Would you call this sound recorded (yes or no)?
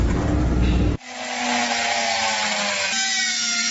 yes